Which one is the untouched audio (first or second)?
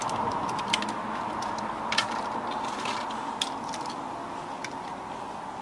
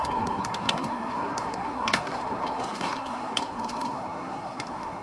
first